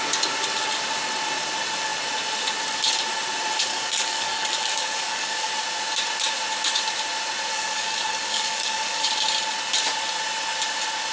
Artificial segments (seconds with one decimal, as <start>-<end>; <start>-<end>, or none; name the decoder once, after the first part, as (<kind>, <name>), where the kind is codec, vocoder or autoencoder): 3.7-5.5 (codec, DAC); 7.5-9.1